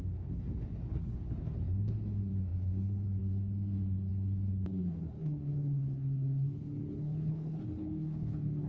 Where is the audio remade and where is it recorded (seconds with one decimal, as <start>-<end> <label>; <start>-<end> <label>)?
0.0-8.7 remade

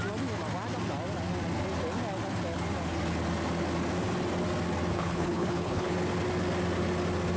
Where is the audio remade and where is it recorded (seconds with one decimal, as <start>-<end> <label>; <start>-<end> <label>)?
0.0-4.9 recorded; 4.9-5.9 remade; 5.9-7.4 recorded